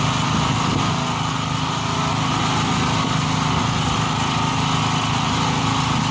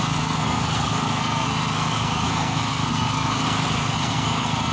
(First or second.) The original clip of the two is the first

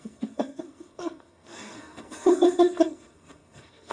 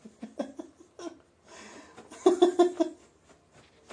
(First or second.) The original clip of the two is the second